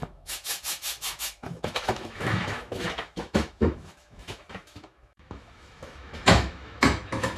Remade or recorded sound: remade